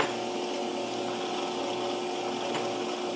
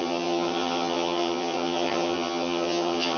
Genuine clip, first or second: first